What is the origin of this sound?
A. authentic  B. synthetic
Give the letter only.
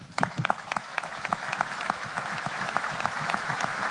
B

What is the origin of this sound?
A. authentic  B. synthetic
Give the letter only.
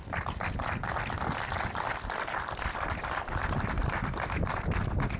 A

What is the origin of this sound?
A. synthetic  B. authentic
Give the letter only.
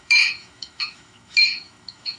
A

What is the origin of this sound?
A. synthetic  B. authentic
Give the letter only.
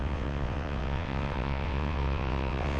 A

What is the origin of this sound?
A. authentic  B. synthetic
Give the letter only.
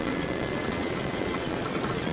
B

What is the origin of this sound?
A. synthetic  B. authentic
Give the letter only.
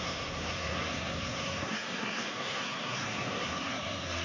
A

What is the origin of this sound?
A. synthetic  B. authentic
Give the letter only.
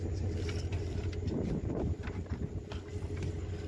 B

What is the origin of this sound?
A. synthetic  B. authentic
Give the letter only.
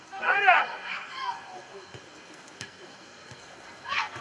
A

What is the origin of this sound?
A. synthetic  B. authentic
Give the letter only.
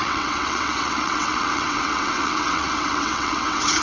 A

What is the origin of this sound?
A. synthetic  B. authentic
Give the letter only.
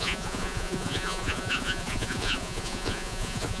A